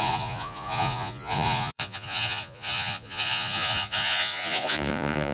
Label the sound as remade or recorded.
remade